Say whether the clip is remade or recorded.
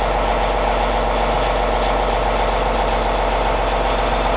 recorded